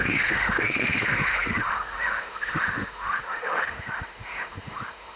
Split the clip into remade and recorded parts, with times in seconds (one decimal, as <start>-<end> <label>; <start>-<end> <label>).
0.0-5.2 remade